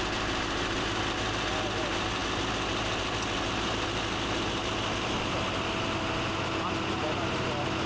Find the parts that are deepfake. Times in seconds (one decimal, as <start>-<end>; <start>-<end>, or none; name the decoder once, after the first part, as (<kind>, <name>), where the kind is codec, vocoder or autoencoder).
none